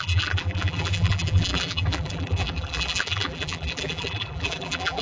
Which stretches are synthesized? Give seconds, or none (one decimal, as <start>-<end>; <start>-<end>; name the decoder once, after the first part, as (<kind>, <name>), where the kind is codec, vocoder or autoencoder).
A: 0.0-5.0 (vocoder, BigVGAN v2)